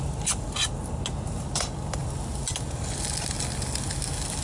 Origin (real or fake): real